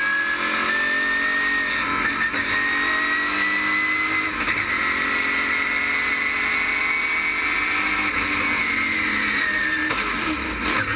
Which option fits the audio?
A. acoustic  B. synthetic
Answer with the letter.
A